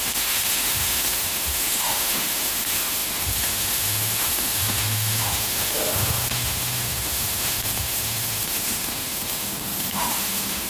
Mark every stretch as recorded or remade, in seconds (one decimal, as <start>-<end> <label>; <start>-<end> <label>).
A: 0.0-10.7 remade